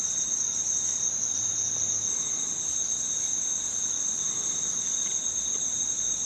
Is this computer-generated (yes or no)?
no